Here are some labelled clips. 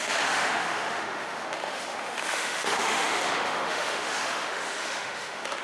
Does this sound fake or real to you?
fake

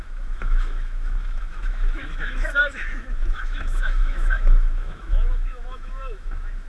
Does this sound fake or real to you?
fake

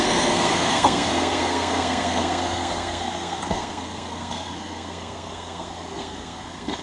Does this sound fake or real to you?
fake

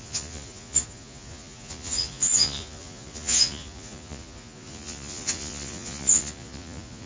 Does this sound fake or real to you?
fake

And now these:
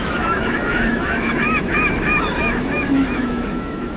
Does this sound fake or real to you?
fake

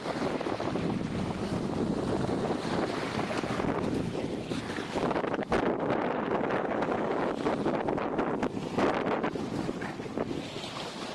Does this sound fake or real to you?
real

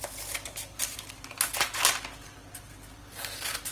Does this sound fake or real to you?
real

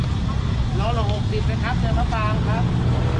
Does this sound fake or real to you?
real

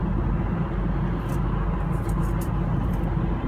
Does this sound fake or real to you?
real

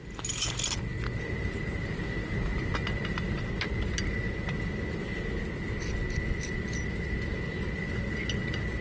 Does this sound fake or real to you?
real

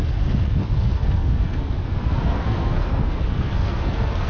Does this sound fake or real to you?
fake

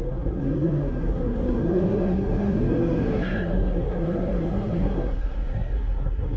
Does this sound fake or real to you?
fake